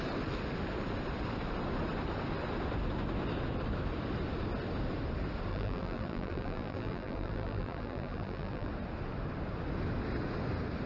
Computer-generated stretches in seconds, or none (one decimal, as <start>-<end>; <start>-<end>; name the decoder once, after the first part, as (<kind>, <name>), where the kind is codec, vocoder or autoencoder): 5.5-8.7 (vocoder, BigVGAN v2)